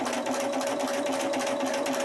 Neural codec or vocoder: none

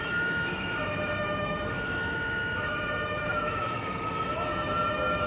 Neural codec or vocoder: autoencoder, DAC-VAE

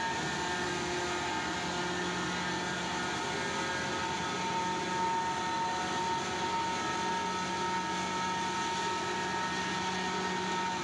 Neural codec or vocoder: none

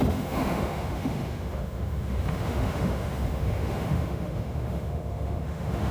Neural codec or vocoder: autoencoder, DAC-VAE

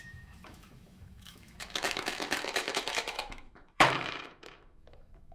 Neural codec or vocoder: autoencoder, DAC-VAE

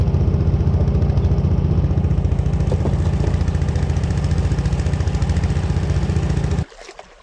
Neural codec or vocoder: none